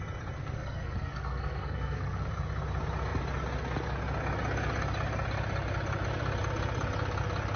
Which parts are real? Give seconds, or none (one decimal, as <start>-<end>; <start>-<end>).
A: 0.0-0.4; 2.3-7.6